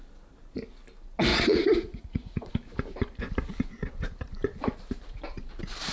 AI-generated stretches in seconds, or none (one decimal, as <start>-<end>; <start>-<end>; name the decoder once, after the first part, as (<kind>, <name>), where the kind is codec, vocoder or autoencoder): 1.3-2.5 (vocoder, Vocos)